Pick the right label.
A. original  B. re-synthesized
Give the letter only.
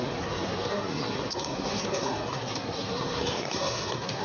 B